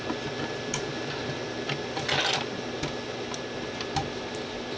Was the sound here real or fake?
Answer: real